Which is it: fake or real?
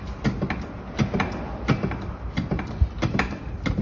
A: real